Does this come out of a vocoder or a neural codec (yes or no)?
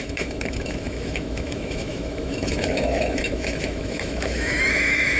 yes